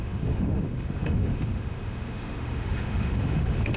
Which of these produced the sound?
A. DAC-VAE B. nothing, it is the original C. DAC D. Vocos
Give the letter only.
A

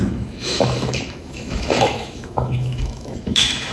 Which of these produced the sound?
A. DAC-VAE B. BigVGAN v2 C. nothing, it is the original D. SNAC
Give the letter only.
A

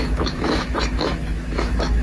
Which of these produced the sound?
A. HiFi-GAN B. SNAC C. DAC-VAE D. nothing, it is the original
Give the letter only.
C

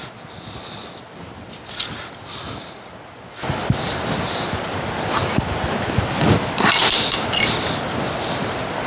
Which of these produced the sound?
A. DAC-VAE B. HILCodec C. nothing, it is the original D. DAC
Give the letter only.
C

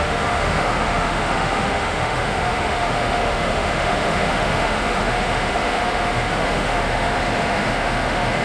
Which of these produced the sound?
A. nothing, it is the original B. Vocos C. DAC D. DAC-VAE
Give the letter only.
D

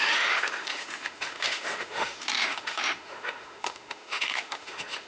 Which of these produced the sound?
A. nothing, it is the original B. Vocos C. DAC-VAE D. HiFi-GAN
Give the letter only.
C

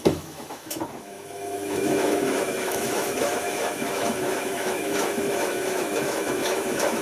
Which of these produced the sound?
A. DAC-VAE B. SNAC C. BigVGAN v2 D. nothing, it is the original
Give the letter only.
A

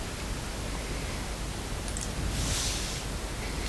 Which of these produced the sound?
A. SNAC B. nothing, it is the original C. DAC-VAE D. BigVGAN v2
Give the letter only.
B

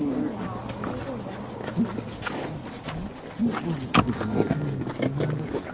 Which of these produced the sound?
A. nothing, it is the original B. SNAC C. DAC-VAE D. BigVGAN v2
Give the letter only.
A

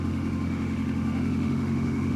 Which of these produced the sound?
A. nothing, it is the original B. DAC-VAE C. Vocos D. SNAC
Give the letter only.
B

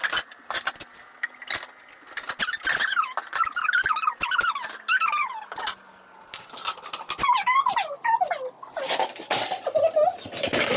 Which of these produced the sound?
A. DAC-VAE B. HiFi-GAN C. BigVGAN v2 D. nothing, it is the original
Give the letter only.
D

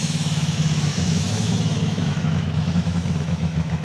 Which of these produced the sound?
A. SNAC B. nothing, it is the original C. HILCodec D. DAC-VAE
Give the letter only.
D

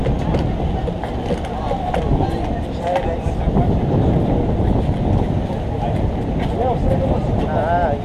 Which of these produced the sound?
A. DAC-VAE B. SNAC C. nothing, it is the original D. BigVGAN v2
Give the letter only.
C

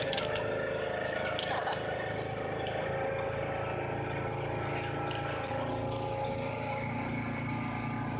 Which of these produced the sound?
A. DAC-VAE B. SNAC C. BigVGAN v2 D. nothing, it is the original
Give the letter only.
D